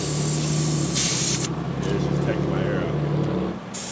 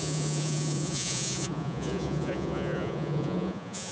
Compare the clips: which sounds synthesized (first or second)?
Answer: second